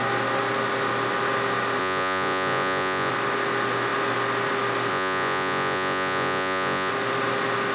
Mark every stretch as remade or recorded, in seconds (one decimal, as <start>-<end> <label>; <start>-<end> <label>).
0.0-1.8 recorded; 1.8-3.1 remade; 3.1-4.9 recorded; 4.9-6.9 remade; 6.9-7.7 recorded